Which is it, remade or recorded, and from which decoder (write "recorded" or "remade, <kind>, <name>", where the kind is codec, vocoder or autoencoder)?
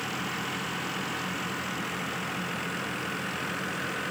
recorded